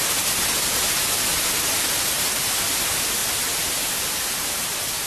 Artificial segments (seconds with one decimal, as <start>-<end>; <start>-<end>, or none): none